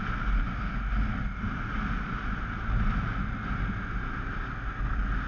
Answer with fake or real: real